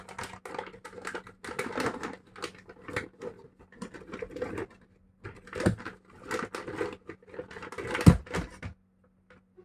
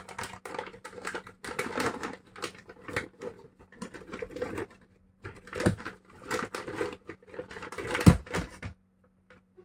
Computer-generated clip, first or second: second